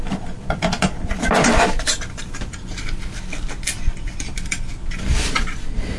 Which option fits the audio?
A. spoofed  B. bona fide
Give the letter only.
A